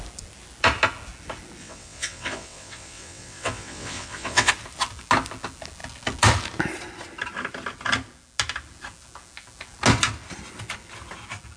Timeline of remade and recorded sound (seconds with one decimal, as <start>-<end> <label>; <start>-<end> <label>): 0.0-1.6 recorded; 1.6-4.5 remade; 4.5-11.6 recorded